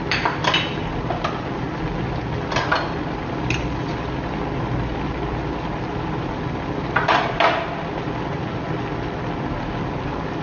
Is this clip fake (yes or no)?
no